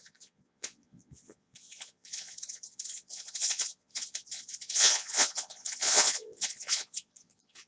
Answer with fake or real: fake